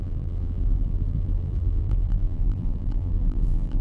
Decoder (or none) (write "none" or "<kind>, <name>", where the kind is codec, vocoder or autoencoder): vocoder, BigVGAN v2